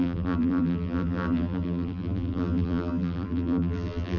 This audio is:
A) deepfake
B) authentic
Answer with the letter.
A